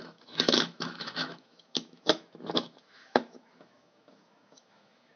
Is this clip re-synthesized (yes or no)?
yes